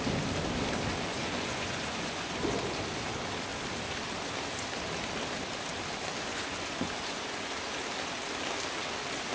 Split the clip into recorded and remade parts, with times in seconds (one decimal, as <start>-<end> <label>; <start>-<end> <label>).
0.0-1.1 recorded; 1.1-2.3 remade; 2.3-6.3 recorded; 6.3-7.5 remade; 7.5-9.3 recorded